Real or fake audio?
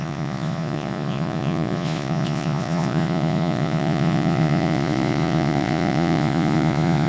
fake